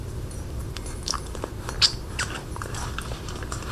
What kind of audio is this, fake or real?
fake